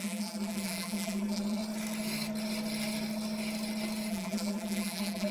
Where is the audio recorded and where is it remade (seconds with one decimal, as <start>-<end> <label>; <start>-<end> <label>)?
0.0-1.6 remade; 1.6-4.1 recorded; 4.1-5.3 remade